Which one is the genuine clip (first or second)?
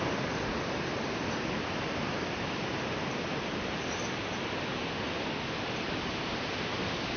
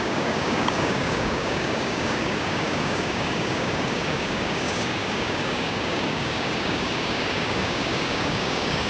first